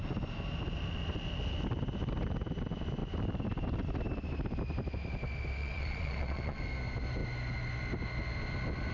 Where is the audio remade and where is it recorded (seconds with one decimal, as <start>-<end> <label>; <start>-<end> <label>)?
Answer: 0.0-5.6 recorded; 5.6-6.6 remade; 6.6-8.9 recorded

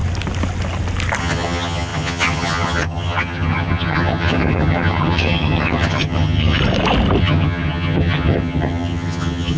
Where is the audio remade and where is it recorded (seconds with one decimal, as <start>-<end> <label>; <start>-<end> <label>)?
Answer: 0.0-1.2 recorded; 1.2-6.6 remade; 6.6-7.2 recorded; 7.2-9.6 remade

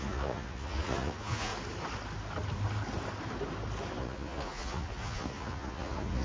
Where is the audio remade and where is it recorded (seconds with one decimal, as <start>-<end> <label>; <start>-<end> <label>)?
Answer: 0.0-1.5 remade; 1.5-4.0 recorded; 4.0-6.2 remade

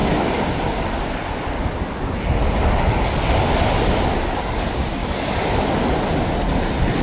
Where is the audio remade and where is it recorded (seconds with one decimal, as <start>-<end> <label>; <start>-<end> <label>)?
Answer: 0.0-5.0 recorded; 5.0-5.7 remade; 5.7-7.0 recorded

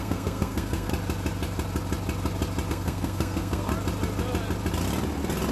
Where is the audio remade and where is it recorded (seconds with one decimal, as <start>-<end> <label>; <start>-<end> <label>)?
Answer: 0.0-0.9 remade; 0.9-2.7 recorded; 2.7-3.7 remade; 3.7-5.5 recorded

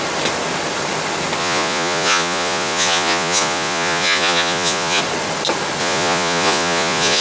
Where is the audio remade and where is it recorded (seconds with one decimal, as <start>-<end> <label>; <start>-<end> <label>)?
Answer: 0.0-1.4 recorded; 1.4-5.0 remade; 5.0-5.8 recorded; 5.8-7.2 remade

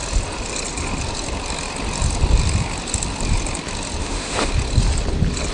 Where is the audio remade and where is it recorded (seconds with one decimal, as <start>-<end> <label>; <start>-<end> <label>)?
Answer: 0.0-4.0 recorded; 4.0-4.5 remade; 4.5-5.5 recorded

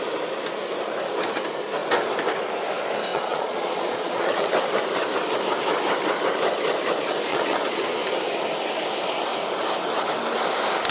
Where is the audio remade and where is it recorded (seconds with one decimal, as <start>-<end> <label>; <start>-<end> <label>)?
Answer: 0.0-3.1 recorded; 3.1-4.5 remade; 4.5-7.3 recorded; 7.3-8.0 remade; 8.0-10.9 recorded